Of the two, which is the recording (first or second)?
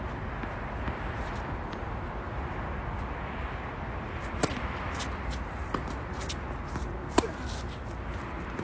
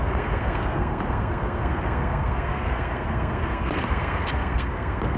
first